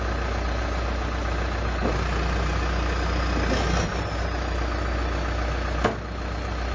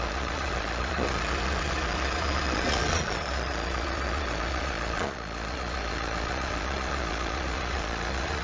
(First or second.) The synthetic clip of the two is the second